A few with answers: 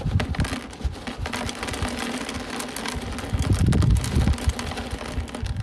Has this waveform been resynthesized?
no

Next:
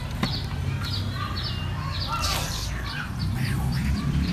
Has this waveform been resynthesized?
no